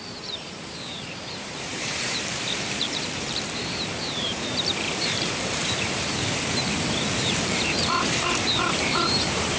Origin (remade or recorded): remade